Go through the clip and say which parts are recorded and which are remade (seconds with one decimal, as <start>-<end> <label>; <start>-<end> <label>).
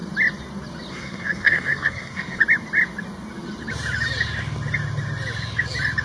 0.0-0.9 recorded; 0.9-2.4 remade; 2.4-6.0 recorded